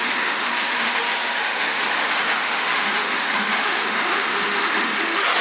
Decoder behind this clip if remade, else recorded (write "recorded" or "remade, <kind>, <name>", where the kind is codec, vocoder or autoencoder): remade, autoencoder, DAC-VAE